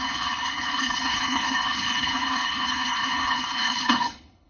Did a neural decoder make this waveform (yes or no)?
yes